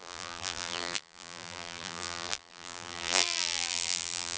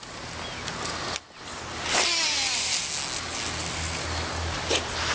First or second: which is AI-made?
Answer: first